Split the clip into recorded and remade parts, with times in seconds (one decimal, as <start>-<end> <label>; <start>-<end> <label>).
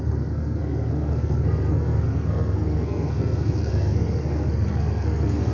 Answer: 0.0-5.5 remade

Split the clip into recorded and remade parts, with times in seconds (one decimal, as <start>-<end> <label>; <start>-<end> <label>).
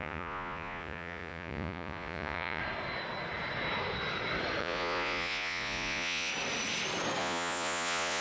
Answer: 0.0-2.6 remade; 2.6-4.6 recorded; 4.6-6.3 remade; 6.3-7.2 recorded; 7.2-8.2 remade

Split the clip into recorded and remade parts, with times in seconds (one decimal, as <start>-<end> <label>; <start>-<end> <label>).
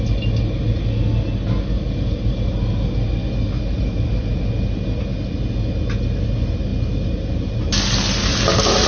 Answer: 0.0-6.7 recorded; 6.7-7.6 remade; 7.6-8.9 recorded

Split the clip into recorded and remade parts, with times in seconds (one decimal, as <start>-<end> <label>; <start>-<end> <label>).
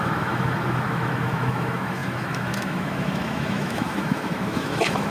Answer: 0.0-5.1 remade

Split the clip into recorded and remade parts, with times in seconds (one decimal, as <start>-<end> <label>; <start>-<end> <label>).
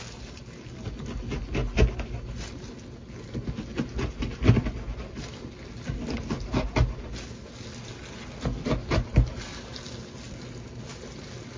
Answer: 0.0-11.6 recorded